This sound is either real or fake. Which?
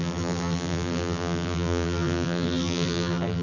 fake